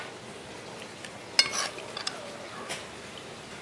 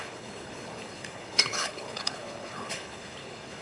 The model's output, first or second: second